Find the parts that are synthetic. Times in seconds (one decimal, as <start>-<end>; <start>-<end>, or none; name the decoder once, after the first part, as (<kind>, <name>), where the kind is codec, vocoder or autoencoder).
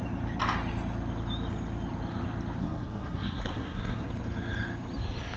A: 2.6-4.1 (codec, SNAC)